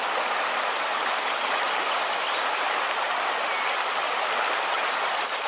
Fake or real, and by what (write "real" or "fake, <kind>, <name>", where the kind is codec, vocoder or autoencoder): real